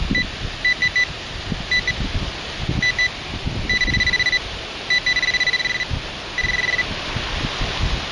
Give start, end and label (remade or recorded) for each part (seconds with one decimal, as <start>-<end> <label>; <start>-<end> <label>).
0.0-8.1 recorded